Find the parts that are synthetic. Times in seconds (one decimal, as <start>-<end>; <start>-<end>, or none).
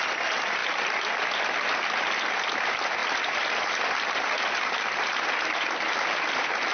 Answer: none